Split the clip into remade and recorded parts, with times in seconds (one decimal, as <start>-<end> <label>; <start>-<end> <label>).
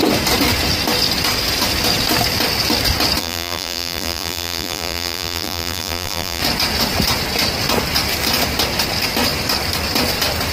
0.0-3.2 recorded; 3.2-6.4 remade; 6.4-10.5 recorded